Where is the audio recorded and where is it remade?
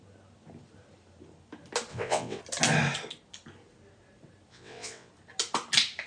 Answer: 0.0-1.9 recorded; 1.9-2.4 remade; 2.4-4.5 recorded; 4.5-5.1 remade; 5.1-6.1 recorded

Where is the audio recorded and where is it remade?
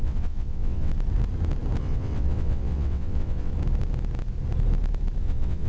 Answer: 0.0-0.9 remade; 0.9-1.8 recorded; 1.8-3.5 remade; 3.5-5.2 recorded; 5.2-5.7 remade